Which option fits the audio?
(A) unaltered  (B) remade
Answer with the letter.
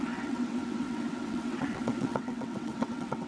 B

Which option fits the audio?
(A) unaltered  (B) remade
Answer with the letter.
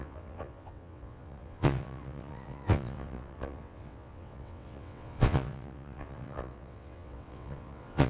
B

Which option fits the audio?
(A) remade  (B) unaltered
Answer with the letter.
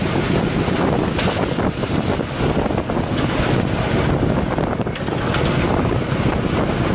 B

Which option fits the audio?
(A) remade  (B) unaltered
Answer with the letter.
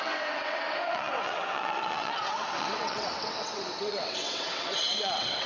A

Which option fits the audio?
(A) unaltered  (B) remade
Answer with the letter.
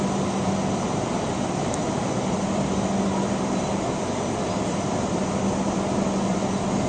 A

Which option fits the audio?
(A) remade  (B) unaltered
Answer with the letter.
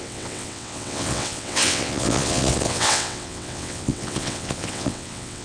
A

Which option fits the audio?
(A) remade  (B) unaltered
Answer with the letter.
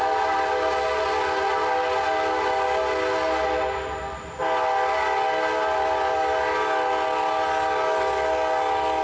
B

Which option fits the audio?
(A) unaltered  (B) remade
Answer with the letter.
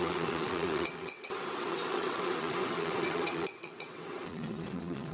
B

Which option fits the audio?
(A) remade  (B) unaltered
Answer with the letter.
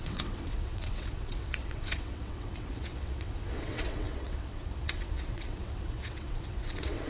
A